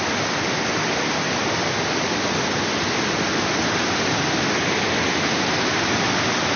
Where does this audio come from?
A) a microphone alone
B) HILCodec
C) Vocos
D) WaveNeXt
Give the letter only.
A